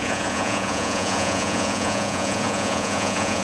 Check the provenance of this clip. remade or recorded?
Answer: remade